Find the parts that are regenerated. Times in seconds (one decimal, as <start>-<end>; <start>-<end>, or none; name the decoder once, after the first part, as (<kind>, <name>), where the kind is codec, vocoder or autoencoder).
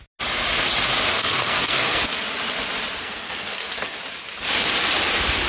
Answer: 1.1-2.0 (codec, SNAC); 3.0-4.0